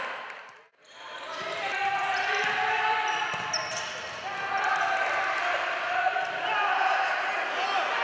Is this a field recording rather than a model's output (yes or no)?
yes